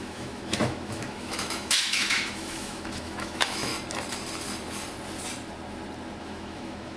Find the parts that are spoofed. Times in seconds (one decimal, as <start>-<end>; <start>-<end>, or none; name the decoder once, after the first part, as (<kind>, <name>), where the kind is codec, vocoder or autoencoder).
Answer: 0.0-3.7 (autoencoder, DAC-VAE); 6.2-7.0